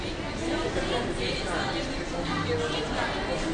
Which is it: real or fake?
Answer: real